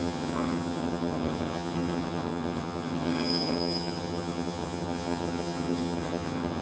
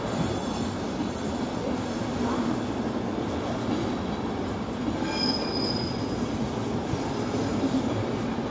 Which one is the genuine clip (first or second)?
second